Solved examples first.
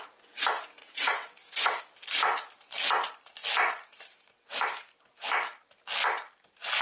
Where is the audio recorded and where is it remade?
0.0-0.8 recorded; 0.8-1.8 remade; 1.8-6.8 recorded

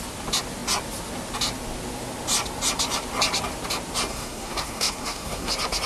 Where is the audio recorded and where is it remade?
0.0-4.1 recorded; 4.1-5.5 remade; 5.5-5.9 recorded

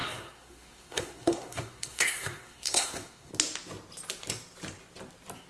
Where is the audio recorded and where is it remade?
0.0-3.3 remade; 3.3-5.5 recorded

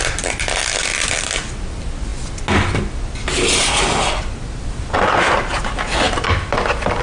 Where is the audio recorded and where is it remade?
0.0-7.0 recorded

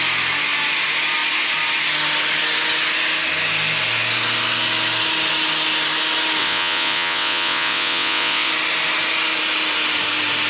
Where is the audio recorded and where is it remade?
0.0-6.4 recorded; 6.4-8.5 remade; 8.5-10.5 recorded

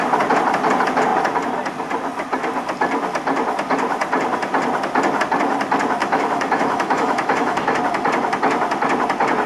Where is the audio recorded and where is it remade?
0.0-6.0 recorded; 6.0-7.8 remade; 7.8-9.5 recorded

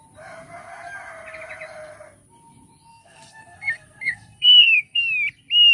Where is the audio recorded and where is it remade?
0.0-2.9 recorded; 2.9-5.0 remade; 5.0-5.7 recorded

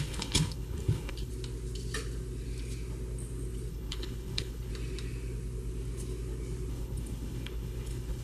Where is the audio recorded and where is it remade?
0.0-1.3 remade; 1.3-3.7 recorded; 3.7-4.7 remade; 4.7-6.7 recorded; 6.7-8.2 remade